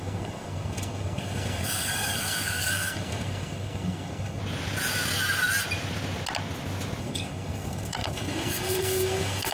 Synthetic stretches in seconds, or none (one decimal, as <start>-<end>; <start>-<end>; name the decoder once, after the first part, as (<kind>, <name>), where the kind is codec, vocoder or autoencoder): 0.0-4.4 (codec, SNAC); 7.0-9.5

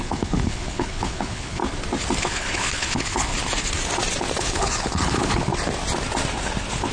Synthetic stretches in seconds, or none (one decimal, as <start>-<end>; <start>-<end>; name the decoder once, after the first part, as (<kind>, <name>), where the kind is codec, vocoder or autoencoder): 0.0-1.6 (codec, HILCodec); 2.2-3.3; 4.4-5.5

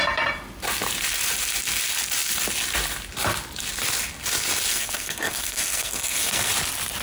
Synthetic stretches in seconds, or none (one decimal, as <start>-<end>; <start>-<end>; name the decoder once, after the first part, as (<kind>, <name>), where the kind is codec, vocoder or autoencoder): 4.7-6.5 (codec, SNAC)

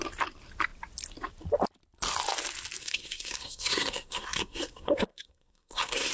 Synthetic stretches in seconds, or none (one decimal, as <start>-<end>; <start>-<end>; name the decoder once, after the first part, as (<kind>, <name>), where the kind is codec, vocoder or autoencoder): 2.8-6.1 (codec, SNAC)